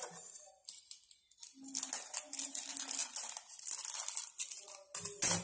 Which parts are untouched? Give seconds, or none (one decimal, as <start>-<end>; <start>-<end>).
0.0-5.4